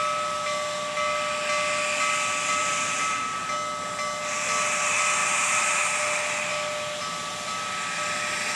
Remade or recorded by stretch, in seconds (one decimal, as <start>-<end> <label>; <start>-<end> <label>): 0.0-2.6 recorded; 2.6-3.4 remade; 3.4-5.2 recorded; 5.2-5.8 remade; 5.8-8.6 recorded

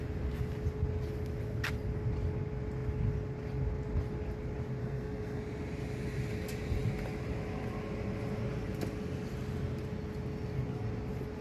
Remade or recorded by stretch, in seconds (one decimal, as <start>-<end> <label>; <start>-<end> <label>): 0.0-4.8 recorded; 4.8-5.4 remade; 5.4-11.4 recorded

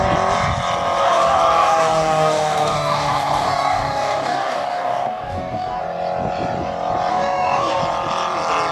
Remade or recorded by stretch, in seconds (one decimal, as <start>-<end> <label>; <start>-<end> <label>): 0.0-1.0 recorded; 1.0-5.8 remade; 5.8-7.1 recorded; 7.1-7.8 remade; 7.8-8.7 recorded

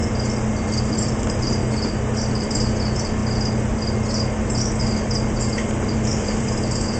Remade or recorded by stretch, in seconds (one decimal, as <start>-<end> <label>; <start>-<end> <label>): 0.0-0.8 recorded; 0.8-1.6 remade; 1.6-2.3 recorded; 2.3-3.2 remade; 3.2-4.8 recorded; 4.8-7.0 remade